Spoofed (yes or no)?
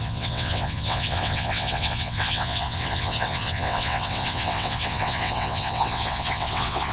yes